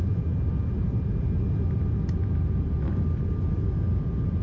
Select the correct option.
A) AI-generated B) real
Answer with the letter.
B